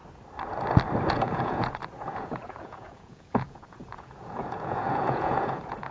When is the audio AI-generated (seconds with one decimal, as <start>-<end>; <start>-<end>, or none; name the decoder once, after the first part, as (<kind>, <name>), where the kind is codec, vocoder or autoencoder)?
1.1-5.9 (vocoder, Vocos)